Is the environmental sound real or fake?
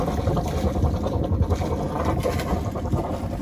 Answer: real